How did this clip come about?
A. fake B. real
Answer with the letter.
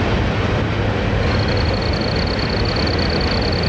B